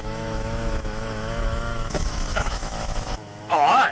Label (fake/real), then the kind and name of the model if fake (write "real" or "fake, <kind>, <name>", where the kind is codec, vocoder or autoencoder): fake, autoencoder, DAC-VAE